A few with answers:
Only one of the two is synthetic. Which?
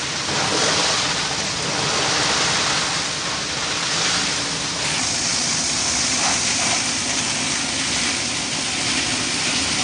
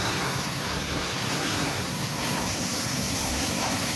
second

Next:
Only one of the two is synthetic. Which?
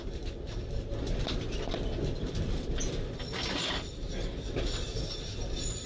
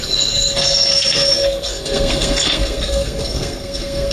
second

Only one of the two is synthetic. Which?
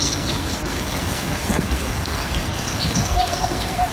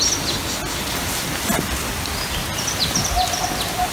first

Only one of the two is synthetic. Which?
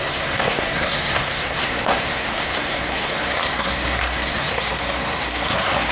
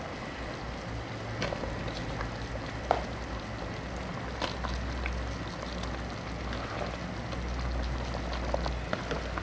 first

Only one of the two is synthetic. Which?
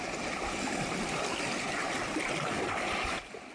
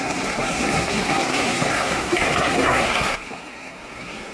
second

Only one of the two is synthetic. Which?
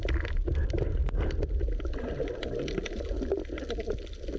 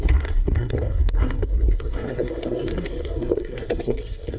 second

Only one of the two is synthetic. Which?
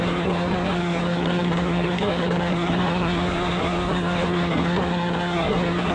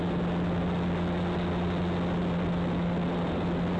first